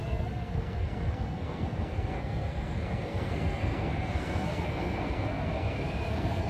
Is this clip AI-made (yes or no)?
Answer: yes